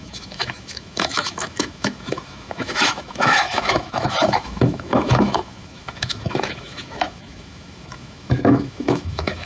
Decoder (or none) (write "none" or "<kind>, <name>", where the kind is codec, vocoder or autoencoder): autoencoder, DAC-VAE